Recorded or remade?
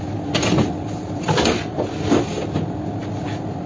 recorded